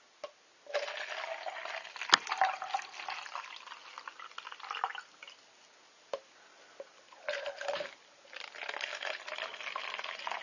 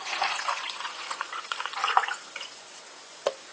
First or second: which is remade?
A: second